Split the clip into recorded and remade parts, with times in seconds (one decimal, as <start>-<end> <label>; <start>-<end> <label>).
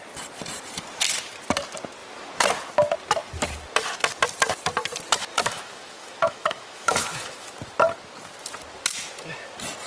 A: 0.0-5.3 recorded; 5.3-7.5 remade; 7.5-9.9 recorded